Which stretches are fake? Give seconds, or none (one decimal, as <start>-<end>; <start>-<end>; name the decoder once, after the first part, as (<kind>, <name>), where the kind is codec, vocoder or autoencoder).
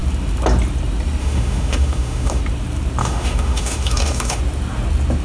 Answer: 1.2-2.4 (autoencoder, DAC-VAE); 3.0-4.4